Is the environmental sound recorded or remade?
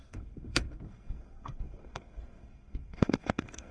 remade